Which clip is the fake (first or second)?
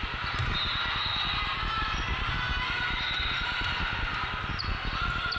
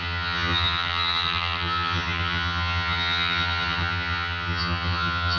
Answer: second